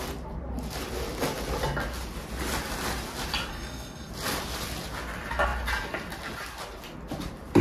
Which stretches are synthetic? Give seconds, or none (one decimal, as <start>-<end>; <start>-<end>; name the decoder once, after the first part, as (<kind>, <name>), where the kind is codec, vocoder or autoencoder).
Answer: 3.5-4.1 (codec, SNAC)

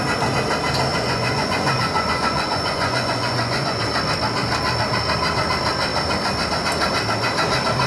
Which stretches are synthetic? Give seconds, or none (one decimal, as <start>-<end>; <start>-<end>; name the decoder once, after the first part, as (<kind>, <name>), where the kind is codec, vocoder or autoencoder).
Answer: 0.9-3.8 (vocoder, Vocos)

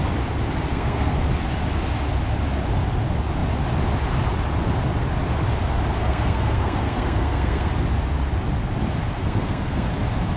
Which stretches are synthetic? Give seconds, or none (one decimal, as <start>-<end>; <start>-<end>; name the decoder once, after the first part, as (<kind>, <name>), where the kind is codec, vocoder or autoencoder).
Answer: 0.7-1.2 (codec, SNAC); 6.0-7.7; 9.2-9.9

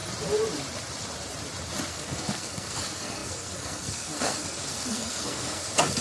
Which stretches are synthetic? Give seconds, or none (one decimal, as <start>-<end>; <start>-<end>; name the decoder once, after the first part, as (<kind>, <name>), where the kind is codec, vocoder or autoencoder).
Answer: 1.9-6.0 (codec, SNAC)